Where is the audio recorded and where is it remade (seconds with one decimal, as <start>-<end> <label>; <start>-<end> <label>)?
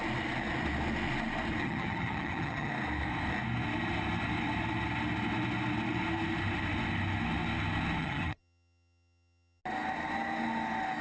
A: 0.0-1.6 recorded; 1.6-2.7 remade; 2.7-8.0 recorded; 8.0-9.6 remade; 9.6-11.0 recorded